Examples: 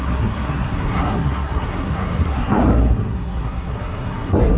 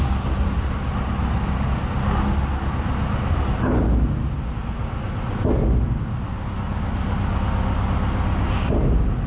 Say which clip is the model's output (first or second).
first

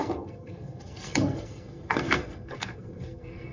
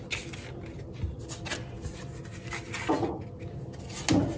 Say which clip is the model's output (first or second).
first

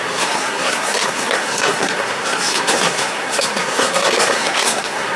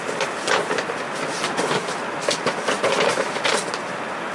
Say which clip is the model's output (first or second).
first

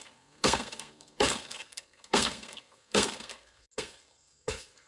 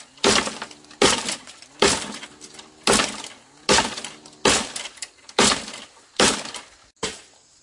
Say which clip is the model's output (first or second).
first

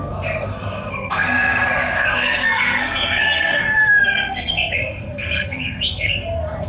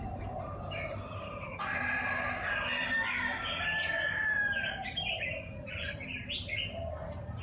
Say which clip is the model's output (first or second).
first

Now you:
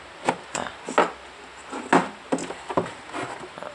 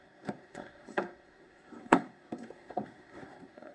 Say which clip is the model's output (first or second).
second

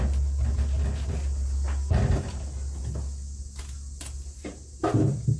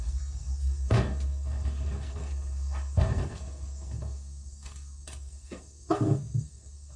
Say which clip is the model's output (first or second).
second